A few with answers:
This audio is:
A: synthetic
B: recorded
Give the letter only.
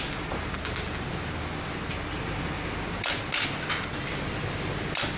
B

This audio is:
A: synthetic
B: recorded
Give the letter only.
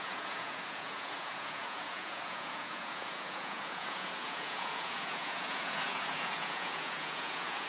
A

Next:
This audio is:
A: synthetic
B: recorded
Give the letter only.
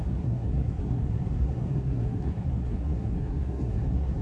A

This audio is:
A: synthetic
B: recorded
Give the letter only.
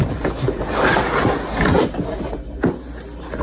B